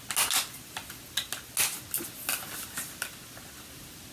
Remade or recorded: recorded